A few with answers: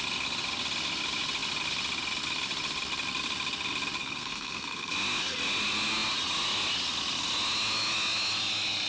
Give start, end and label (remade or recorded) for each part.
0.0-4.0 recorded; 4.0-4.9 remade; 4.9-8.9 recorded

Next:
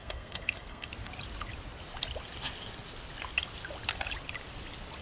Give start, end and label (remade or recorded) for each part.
0.0-0.9 remade; 0.9-5.0 recorded

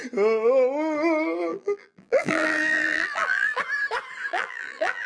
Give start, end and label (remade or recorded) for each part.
0.0-1.5 recorded; 1.5-3.6 remade; 3.6-4.3 recorded; 4.3-5.1 remade

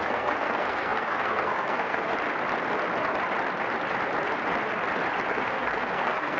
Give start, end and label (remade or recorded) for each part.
0.0-2.1 remade; 2.1-5.3 recorded; 5.3-6.4 remade